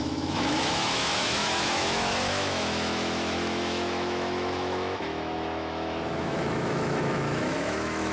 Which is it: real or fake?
fake